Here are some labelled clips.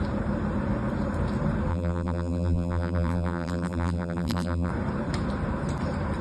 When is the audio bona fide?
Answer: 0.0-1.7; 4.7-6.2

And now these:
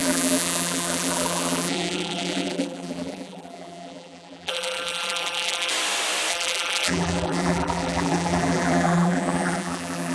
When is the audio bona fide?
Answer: 5.7-6.3

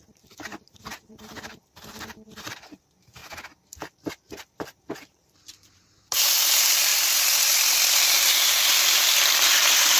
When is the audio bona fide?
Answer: 3.2-4.1; 6.9-8.0

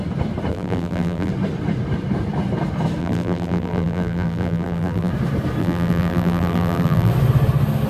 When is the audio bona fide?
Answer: 0.0-0.5; 1.3-3.0; 5.1-5.6; 7.1-7.9

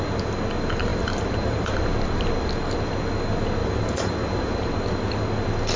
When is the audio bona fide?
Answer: 0.0-0.9; 2.5-3.6; 4.7-5.8

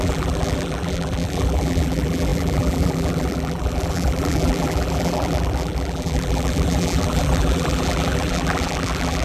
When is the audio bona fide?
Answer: none